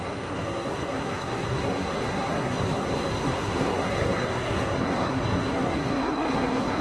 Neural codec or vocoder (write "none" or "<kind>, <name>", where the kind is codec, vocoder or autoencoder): codec, SNAC